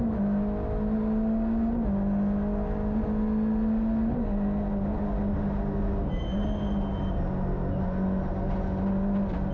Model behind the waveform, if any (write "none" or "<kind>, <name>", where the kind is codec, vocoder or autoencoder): none